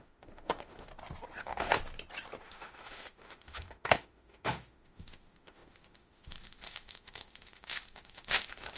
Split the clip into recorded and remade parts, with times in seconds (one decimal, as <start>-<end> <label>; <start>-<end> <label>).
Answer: 0.0-0.9 remade; 0.9-1.4 recorded; 1.4-1.8 remade; 1.8-2.4 recorded; 2.4-8.8 remade